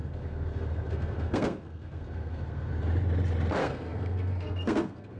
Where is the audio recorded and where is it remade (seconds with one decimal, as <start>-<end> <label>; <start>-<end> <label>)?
0.0-2.7 remade; 2.7-3.6 recorded; 3.6-5.2 remade